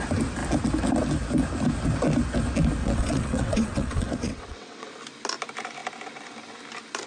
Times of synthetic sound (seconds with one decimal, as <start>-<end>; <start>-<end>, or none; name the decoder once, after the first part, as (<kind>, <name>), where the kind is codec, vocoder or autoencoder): 2.8-4.9 (vocoder, WaveNeXt)